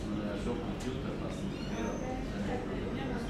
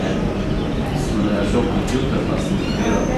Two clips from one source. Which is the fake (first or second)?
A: second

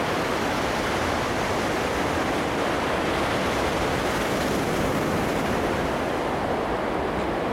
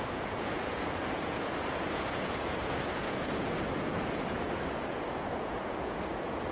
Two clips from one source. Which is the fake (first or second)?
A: second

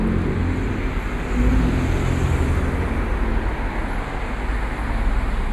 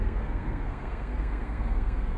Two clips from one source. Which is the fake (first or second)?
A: second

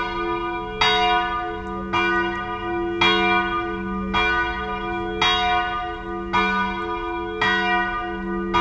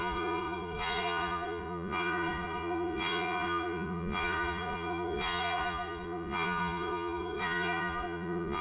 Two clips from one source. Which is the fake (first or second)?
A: second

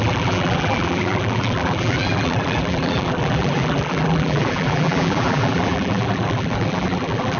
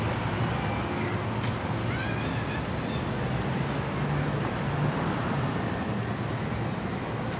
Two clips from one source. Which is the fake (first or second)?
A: first